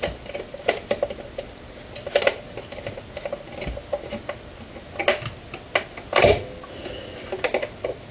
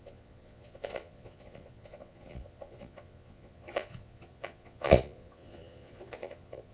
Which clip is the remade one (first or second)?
second